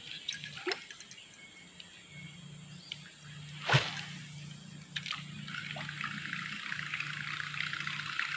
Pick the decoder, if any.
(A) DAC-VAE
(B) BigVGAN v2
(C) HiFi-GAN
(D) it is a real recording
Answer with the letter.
D